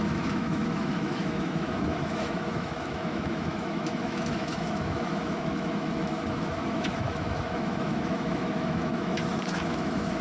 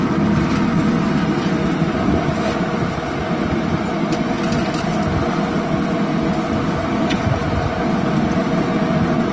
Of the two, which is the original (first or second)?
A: second